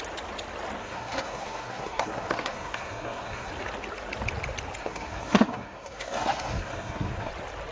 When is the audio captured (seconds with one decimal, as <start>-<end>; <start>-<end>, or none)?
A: 0.0-0.8; 3.5-4.8; 7.3-7.7